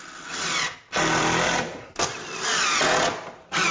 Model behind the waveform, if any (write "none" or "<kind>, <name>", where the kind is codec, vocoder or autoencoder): none